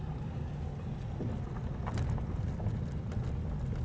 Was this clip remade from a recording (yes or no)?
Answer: no